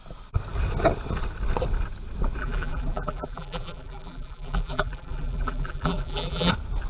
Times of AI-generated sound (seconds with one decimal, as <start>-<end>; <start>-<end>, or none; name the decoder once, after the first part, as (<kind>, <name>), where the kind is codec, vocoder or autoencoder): 2.4-6.5 (vocoder, BigVGAN v2)